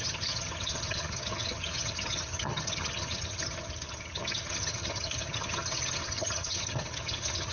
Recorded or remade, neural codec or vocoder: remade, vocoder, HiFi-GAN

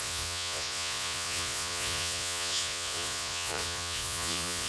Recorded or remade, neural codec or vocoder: remade, vocoder, Vocos